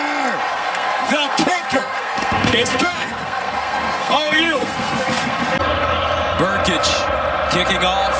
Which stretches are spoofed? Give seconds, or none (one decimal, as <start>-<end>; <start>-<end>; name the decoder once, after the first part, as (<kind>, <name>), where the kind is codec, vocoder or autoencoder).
0.5-5.4 (codec, SNAC)